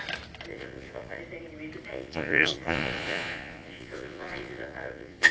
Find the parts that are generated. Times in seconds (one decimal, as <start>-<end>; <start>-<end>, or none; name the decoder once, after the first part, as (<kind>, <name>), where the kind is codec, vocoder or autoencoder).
0.5-1.2 (vocoder, Vocos); 1.9-5.3